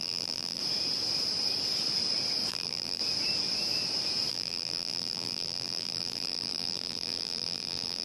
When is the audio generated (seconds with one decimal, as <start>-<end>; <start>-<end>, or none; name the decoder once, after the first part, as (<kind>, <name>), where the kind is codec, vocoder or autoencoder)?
0.0-0.6 (vocoder, BigVGAN v2); 2.5-3.0; 4.3-8.0